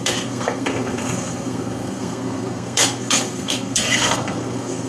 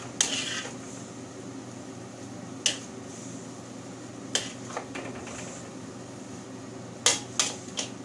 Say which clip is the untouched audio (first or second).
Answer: second